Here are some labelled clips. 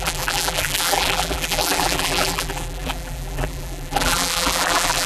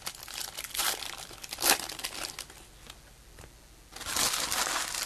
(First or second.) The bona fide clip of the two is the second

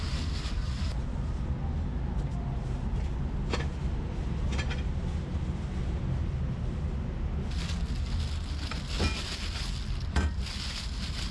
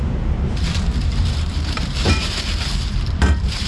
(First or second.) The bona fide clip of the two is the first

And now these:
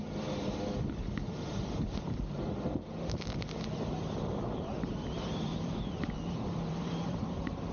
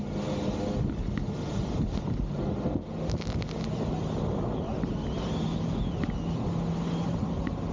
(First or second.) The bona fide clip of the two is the second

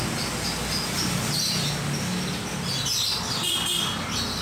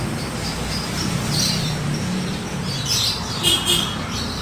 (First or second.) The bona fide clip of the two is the first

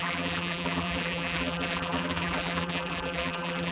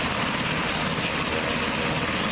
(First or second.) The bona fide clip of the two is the second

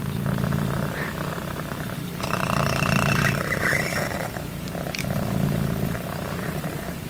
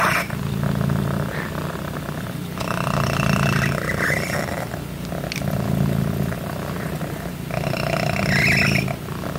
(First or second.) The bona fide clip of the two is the second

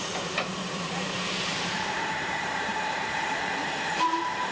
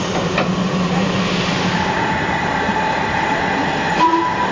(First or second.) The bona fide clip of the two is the second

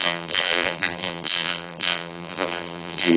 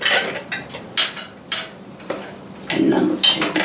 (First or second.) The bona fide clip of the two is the second